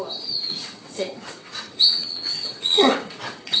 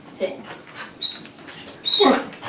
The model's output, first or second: first